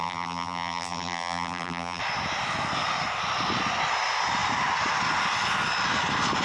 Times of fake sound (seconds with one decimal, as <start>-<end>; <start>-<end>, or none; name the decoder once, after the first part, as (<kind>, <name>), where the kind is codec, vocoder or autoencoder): 0.0-2.0 (vocoder, BigVGAN v2)